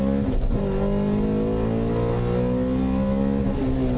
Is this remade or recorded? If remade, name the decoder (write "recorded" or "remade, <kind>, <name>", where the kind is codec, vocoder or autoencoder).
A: recorded